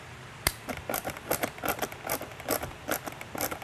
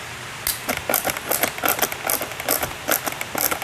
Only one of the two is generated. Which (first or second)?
first